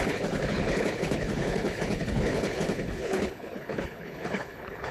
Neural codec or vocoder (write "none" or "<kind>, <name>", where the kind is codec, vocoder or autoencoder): codec, HILCodec